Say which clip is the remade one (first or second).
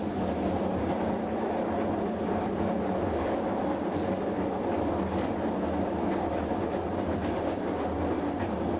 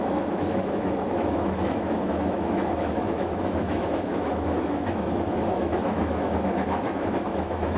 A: second